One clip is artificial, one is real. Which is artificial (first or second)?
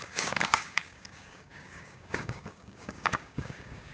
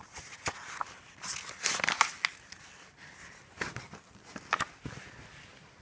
first